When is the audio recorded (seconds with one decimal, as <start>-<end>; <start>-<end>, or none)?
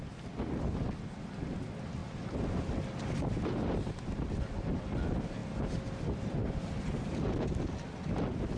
0.0-8.6